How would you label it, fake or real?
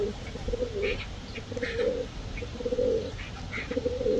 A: real